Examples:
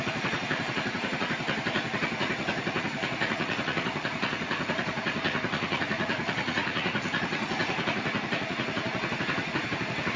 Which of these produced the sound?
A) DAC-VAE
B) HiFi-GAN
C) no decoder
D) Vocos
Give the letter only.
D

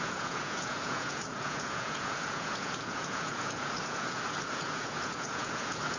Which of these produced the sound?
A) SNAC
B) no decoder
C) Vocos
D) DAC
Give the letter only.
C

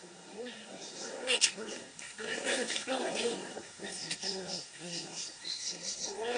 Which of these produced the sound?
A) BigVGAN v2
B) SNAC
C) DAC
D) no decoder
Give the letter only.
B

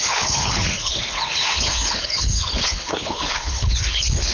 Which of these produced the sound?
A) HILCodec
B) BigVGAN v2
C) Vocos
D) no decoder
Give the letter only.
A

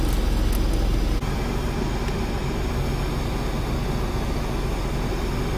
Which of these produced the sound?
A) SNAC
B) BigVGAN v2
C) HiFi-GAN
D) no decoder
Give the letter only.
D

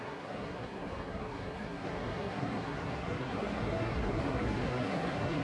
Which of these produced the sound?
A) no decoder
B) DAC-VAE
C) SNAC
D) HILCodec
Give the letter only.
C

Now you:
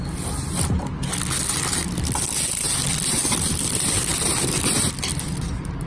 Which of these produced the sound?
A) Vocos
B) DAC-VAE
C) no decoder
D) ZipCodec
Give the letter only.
C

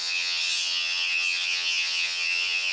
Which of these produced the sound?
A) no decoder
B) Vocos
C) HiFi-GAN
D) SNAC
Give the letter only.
C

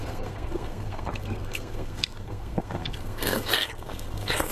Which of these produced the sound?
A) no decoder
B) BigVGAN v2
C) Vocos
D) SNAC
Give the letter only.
D